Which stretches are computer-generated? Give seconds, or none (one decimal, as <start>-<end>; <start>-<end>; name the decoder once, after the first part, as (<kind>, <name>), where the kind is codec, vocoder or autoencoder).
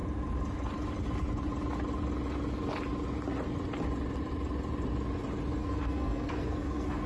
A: 5.6-7.1 (codec, SNAC)